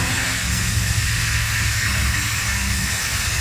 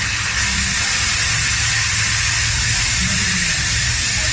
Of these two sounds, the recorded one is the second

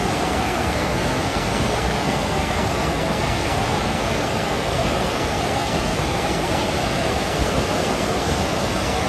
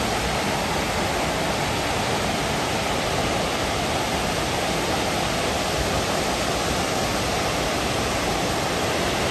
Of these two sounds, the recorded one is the second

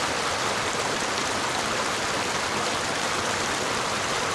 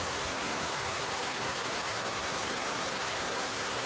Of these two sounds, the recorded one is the first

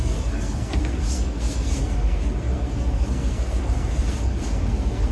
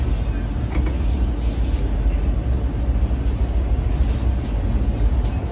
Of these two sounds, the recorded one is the second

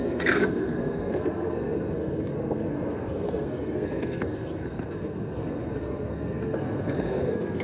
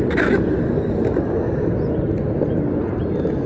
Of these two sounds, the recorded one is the second